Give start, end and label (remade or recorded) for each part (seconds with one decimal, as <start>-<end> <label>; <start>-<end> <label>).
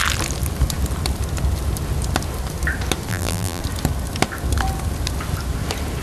0.0-3.1 recorded; 3.1-3.6 remade; 3.6-6.0 recorded